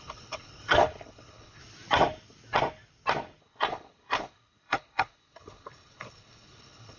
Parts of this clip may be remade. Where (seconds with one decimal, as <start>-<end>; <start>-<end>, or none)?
0.0-1.6; 3.4-7.0